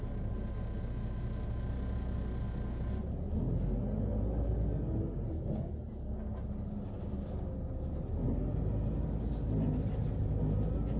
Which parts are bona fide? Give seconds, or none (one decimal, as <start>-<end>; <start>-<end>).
0.0-11.0